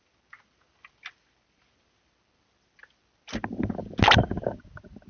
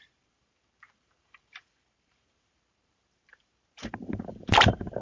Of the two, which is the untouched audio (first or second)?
first